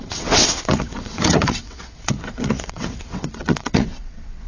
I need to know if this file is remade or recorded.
remade